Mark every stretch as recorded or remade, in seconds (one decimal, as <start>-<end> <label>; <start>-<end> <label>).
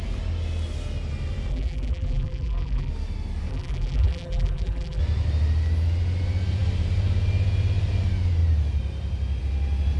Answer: 0.0-1.5 recorded; 1.5-2.9 remade; 2.9-3.5 recorded; 3.5-5.0 remade; 5.0-10.0 recorded